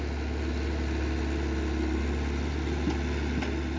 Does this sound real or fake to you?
real